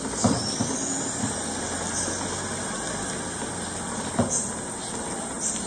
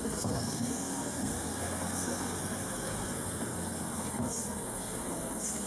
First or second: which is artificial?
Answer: second